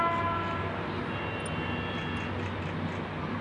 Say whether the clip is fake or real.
real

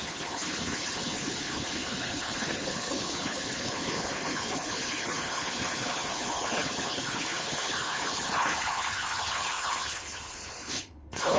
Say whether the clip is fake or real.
fake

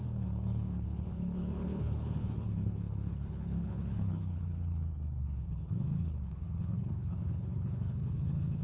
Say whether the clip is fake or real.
fake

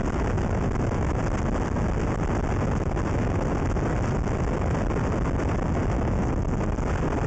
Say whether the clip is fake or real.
real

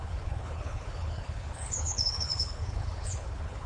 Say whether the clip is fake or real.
fake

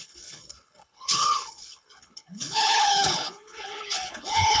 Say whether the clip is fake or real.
fake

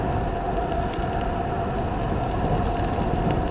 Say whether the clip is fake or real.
real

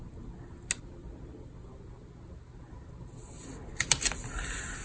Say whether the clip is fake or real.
real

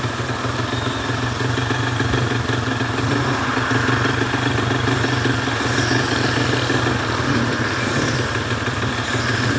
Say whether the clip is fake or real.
real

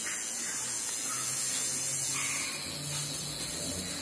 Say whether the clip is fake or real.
real